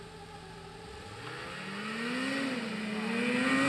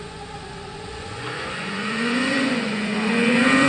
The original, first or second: first